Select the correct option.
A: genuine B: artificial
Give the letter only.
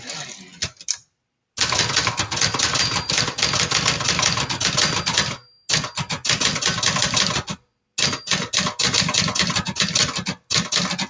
A